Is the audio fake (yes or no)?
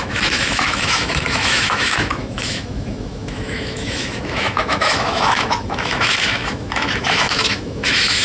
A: yes